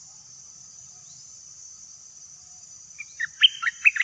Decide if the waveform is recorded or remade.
remade